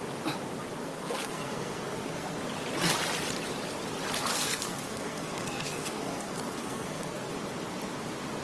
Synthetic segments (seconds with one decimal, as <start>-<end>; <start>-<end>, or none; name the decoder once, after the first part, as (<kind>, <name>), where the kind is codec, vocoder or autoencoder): 0.8-2.4 (codec, SNAC); 4.3-7.3